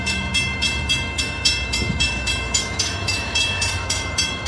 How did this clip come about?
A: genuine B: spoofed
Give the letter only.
B